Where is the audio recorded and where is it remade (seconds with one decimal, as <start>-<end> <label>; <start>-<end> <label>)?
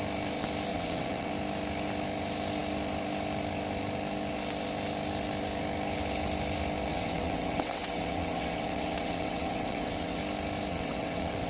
0.0-0.7 recorded; 0.7-1.3 remade; 1.3-6.9 recorded; 6.9-10.2 remade; 10.2-10.7 recorded; 10.7-11.5 remade